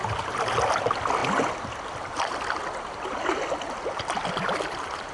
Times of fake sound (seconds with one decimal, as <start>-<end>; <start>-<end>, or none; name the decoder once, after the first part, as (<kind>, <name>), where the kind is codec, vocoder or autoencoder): none